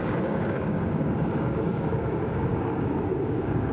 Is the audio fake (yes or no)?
yes